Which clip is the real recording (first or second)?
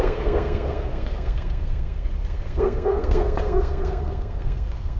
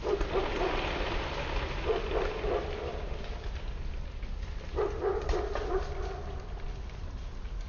second